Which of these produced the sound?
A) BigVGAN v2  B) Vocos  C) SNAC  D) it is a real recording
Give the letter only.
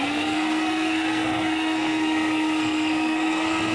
C